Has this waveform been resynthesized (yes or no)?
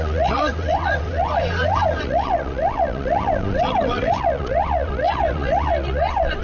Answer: yes